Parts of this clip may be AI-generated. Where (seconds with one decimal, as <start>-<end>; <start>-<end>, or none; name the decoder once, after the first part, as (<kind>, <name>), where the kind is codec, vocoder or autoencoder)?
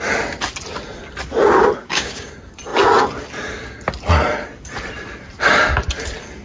1.8-2.3 (codec, DAC)